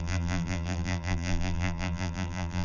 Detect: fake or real fake